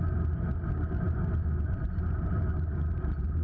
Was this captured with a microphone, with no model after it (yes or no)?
yes